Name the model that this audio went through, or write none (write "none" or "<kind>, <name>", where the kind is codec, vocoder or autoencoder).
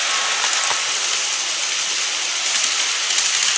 none